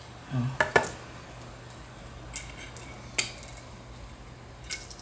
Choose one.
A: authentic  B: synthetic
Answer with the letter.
A